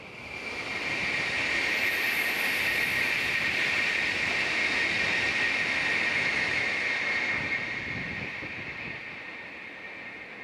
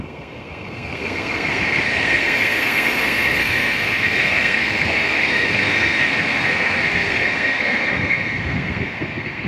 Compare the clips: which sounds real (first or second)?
first